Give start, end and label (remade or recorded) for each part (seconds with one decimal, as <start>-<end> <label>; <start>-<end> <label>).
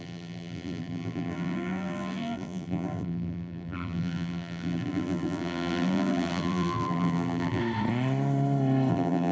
0.0-7.6 remade; 7.6-8.9 recorded; 8.9-9.3 remade